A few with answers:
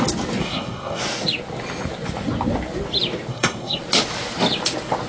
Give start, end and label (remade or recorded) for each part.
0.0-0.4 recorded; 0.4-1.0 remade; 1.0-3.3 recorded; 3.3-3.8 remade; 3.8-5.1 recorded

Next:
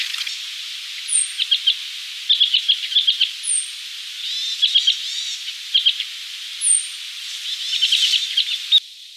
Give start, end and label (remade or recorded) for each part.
0.0-9.2 recorded

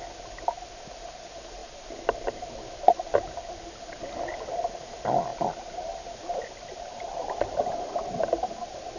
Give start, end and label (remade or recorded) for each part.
0.0-5.3 recorded; 5.3-7.8 remade; 7.8-9.0 recorded

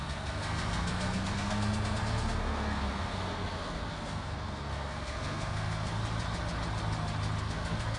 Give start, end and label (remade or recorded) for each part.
0.0-6.0 remade; 6.0-7.4 recorded; 7.4-8.0 remade

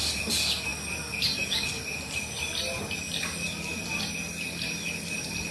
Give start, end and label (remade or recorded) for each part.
0.0-5.5 recorded

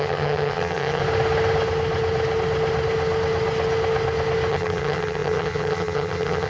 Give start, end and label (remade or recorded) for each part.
0.0-1.0 remade; 1.0-4.5 recorded; 4.5-6.5 remade